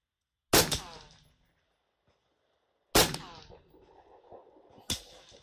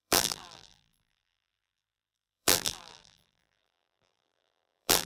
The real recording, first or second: first